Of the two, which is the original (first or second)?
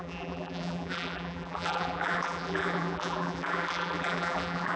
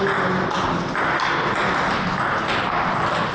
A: second